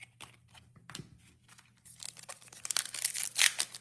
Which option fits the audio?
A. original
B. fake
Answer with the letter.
B